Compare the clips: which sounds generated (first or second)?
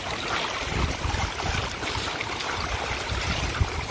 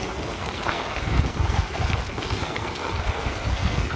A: second